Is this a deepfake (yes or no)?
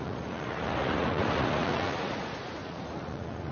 yes